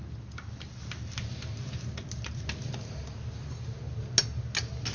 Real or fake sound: real